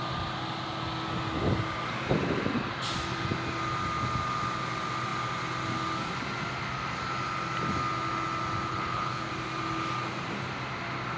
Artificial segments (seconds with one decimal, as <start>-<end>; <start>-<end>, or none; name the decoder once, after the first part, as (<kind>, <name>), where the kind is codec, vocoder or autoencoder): 8.7-9.3 (codec, HILCodec)

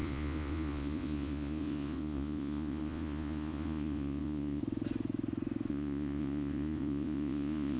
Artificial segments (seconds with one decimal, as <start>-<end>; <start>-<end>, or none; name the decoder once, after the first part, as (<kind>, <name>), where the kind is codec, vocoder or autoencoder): 0.0-4.6 (vocoder, Vocos); 5.7-7.8

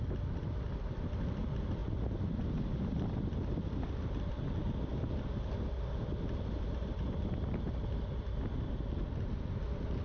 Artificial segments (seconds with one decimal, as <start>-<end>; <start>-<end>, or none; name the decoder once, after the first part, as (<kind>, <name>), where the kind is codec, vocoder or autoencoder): none

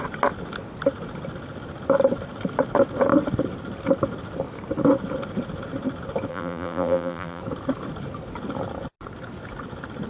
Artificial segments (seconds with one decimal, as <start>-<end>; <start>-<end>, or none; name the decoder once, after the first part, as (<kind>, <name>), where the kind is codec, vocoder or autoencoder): 6.3-7.4 (vocoder, BigVGAN v2)

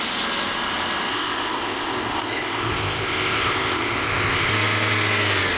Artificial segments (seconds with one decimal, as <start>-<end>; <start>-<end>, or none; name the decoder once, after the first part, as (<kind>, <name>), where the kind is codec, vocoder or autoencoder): 1.1-4.5 (codec, ZipCodec)

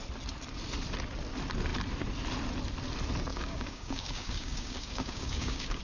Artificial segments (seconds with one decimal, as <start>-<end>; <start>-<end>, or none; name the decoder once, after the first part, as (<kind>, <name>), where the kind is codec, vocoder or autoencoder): 3.3-5.8 (codec, DAC)

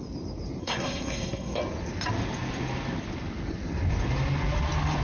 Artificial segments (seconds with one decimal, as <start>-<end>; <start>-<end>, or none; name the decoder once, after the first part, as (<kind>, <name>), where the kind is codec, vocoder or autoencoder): 0.6-1.6 (codec, SNAC)